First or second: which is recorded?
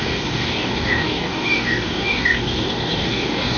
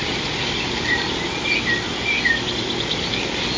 second